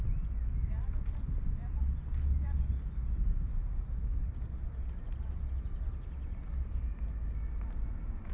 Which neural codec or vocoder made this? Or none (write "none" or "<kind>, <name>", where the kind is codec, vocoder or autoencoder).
none